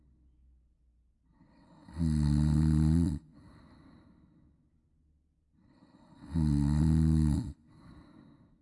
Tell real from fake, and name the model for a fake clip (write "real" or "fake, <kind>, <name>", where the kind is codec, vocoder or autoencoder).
real